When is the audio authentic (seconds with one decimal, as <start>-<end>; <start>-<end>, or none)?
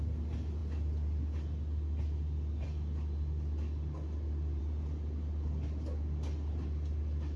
0.0-7.4